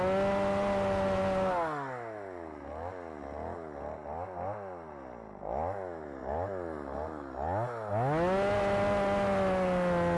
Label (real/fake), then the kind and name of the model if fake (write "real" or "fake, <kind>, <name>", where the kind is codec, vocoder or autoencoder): real